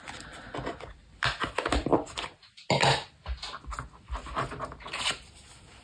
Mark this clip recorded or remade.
recorded